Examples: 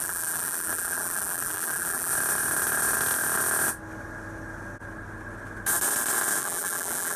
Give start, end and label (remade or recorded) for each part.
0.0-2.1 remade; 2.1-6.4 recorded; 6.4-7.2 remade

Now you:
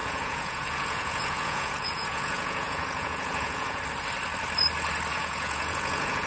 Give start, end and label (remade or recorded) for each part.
0.0-3.8 remade; 3.8-5.1 recorded; 5.1-6.3 remade